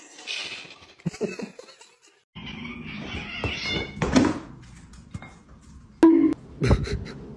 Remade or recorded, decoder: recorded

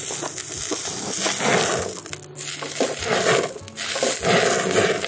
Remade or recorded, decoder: recorded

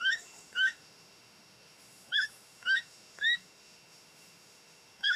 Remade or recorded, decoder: remade, autoencoder, DAC-VAE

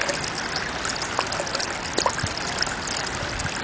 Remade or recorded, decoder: recorded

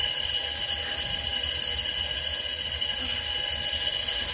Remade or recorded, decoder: recorded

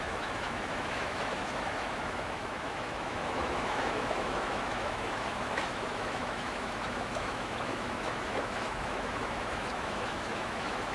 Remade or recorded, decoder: remade, autoencoder, DAC-VAE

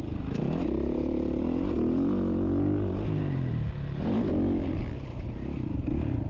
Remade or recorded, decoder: recorded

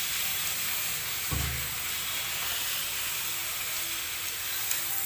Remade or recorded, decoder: recorded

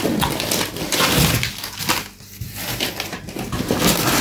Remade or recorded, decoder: recorded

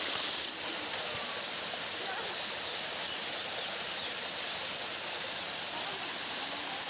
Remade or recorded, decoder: recorded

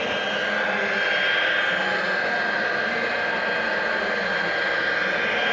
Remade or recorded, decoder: recorded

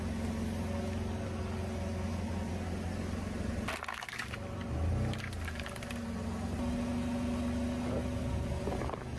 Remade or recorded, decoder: recorded